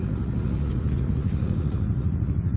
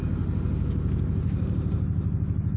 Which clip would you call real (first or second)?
second